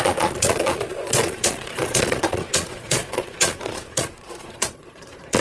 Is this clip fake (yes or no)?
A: yes